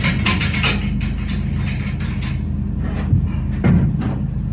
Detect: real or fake real